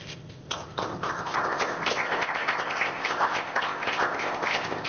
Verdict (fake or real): fake